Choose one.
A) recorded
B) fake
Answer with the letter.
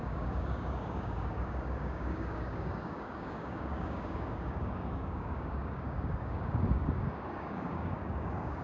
B